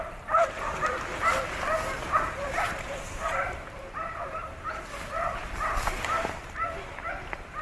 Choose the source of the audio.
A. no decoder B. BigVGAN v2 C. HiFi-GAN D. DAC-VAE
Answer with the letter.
B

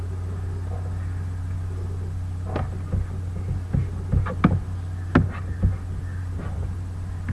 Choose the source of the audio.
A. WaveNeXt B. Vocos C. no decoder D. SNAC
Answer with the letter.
C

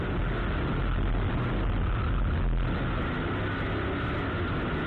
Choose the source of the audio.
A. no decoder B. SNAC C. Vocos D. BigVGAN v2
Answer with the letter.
A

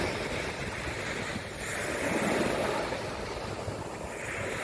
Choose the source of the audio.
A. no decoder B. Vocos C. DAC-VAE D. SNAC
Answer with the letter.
A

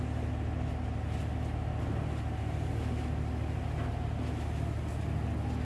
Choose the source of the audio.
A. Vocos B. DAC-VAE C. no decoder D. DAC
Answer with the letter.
C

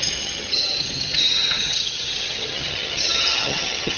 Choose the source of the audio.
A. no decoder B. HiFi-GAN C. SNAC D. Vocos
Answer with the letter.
B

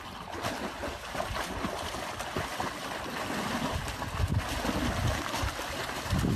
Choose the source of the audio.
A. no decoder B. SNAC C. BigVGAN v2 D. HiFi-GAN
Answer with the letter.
A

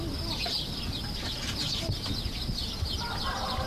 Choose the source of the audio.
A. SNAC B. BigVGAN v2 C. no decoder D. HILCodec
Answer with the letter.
C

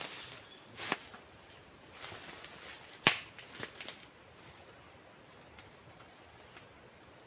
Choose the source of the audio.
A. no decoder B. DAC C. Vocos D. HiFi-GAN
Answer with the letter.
A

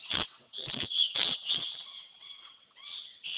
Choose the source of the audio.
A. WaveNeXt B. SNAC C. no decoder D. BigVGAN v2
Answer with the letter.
A